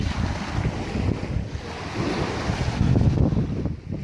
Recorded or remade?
recorded